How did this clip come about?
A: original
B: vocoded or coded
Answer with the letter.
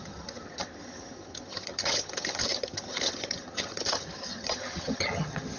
B